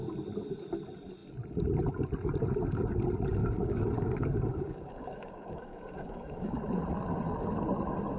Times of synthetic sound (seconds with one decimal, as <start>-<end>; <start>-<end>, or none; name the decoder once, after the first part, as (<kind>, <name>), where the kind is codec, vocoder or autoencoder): 3.4-6.6 (codec, DAC)

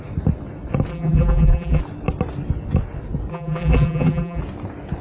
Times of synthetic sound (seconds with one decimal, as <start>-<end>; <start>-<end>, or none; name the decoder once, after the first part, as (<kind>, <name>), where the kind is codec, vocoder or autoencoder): 0.9-1.8 (vocoder, BigVGAN v2); 3.3-4.4

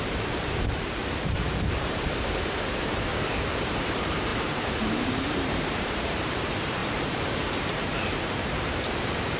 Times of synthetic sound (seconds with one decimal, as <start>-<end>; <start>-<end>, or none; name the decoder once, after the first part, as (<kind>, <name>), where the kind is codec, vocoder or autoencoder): 0.0-1.0 (vocoder, BigVGAN v2); 1.7-3.1; 3.6-9.4

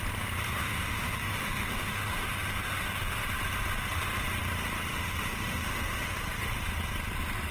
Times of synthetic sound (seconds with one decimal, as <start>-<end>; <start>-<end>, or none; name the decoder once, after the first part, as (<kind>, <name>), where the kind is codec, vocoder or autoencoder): 0.6-3.2 (autoencoder, DAC-VAE); 4.9-6.2

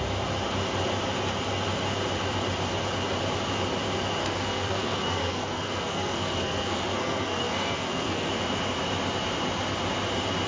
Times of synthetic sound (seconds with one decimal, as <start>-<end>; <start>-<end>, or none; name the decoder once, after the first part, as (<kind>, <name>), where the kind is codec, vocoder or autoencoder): 4.2-8.3 (codec, SNAC)

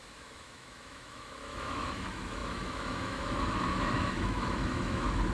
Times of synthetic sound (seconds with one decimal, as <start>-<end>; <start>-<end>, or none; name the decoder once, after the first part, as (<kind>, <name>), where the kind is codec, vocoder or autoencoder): 0.0-5.3 (autoencoder, DAC-VAE)

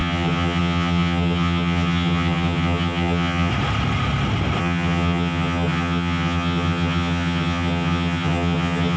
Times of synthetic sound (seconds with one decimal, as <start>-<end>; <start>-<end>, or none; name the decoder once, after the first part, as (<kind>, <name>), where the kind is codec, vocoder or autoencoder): 0.0-3.5 (vocoder, HiFi-GAN); 4.6-9.0

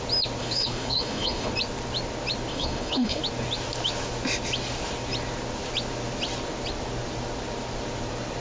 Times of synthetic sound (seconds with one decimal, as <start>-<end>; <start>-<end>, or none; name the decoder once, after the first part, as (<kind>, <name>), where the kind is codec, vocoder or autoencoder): 0.4-1.5 (codec, HILCodec); 2.5-3.2